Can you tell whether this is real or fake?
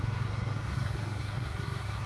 fake